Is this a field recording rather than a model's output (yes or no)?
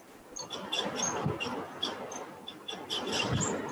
yes